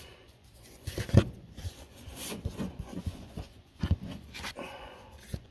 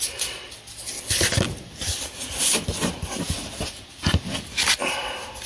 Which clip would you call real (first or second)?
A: second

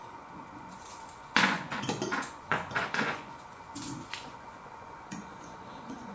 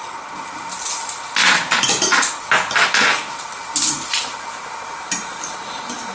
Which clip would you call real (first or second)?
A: second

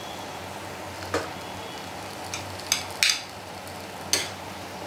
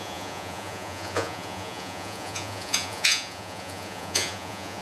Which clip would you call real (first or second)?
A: first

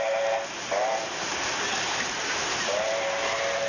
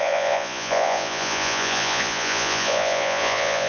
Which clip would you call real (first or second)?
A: first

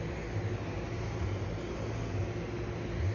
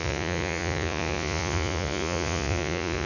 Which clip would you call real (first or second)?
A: first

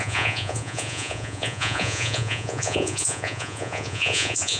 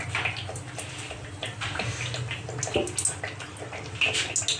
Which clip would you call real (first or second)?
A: second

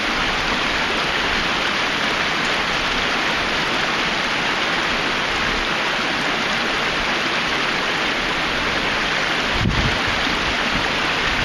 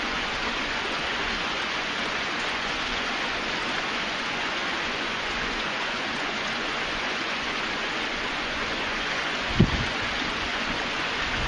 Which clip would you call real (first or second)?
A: first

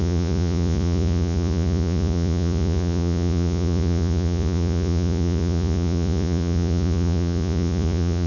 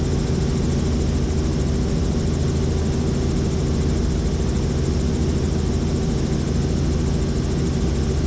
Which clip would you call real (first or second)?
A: second